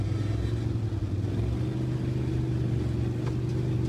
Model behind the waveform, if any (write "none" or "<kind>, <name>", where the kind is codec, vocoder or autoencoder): none